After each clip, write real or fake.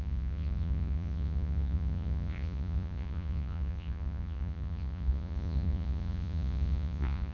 fake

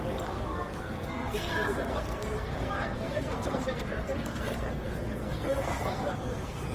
fake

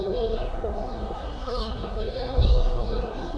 fake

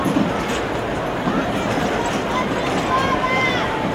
real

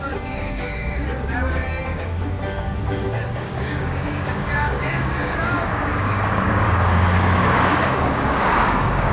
fake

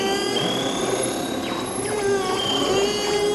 real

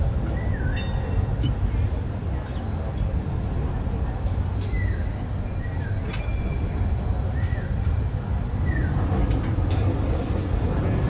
real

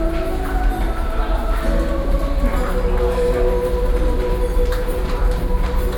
real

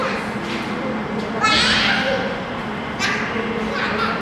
real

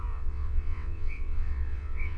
fake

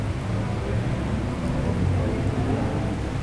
real